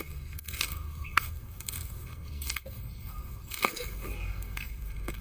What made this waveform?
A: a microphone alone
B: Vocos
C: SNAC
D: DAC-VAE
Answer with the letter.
C